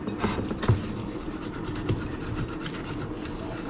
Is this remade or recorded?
recorded